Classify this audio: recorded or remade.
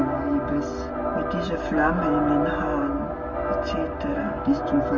recorded